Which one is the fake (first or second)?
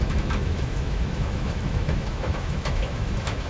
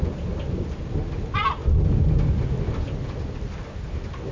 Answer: first